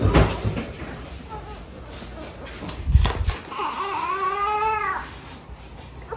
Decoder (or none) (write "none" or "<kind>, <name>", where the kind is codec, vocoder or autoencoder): none